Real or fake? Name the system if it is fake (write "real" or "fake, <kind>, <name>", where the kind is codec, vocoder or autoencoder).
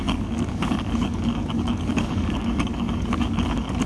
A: fake, codec, DAC